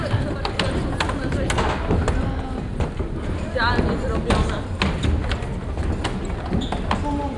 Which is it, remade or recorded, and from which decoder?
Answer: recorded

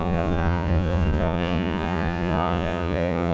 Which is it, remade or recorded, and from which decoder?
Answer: remade, vocoder, Vocos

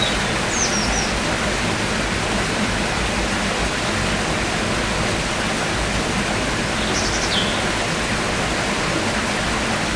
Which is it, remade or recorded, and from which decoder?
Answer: recorded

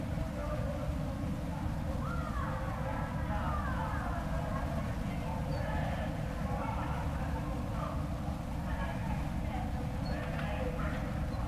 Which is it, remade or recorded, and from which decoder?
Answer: recorded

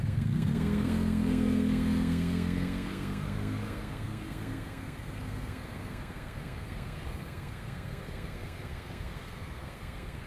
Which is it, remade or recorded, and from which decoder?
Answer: remade, codec, SNAC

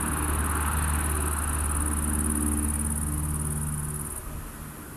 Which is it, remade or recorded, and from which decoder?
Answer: recorded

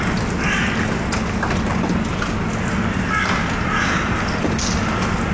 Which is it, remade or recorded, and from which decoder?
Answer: recorded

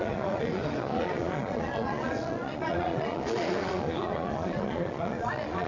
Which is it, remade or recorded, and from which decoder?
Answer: remade, vocoder, Vocos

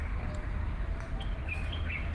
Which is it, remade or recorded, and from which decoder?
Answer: recorded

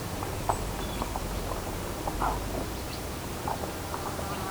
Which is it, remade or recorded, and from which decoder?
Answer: remade, vocoder, BigVGAN v2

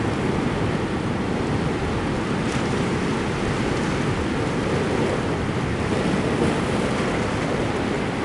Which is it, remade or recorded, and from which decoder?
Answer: recorded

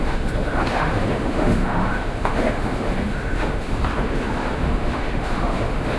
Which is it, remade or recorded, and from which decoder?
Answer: remade, autoencoder, DAC-VAE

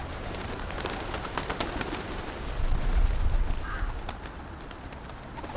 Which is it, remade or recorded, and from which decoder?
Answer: recorded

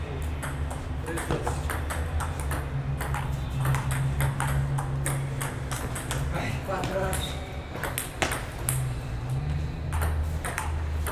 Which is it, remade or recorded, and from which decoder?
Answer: recorded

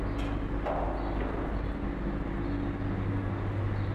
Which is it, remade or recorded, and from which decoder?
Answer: recorded